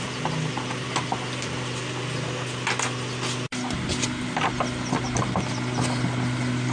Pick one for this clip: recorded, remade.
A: recorded